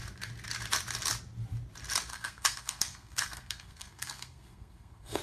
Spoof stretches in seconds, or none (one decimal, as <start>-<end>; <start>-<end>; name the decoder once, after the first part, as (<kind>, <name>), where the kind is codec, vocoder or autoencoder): 2.1-5.2 (codec, SNAC)